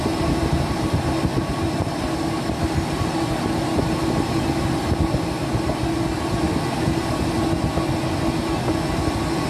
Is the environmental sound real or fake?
real